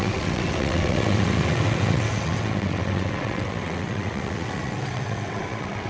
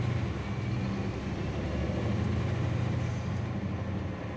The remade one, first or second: first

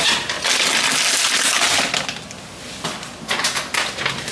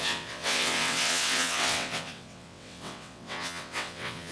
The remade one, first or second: second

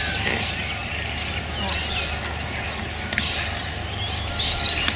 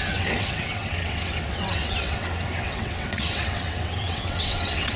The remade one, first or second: second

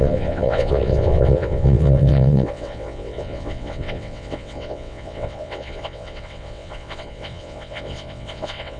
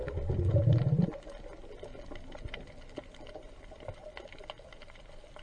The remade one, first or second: first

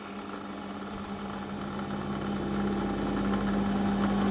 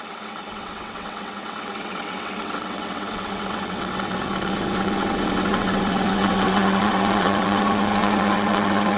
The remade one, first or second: second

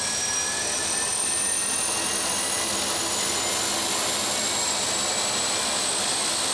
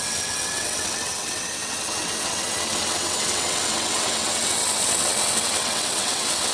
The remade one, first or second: second